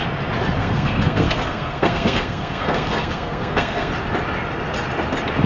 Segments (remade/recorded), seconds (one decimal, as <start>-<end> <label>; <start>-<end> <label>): 0.0-0.6 recorded; 0.6-3.9 remade; 3.9-5.5 recorded